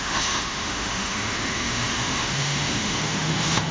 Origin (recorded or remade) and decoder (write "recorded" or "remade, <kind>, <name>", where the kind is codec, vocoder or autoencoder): remade, autoencoder, DAC-VAE